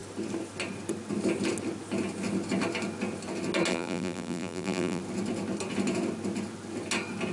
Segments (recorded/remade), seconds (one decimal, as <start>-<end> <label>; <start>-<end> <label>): 0.0-3.7 recorded; 3.7-5.0 remade; 5.0-7.3 recorded